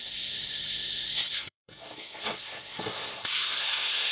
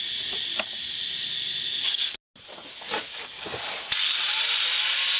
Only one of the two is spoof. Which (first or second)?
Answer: first